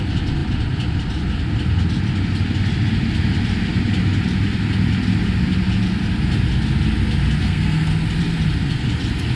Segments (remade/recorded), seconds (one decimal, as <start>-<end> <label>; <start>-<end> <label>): 0.0-7.4 recorded; 7.4-7.9 remade; 7.9-9.4 recorded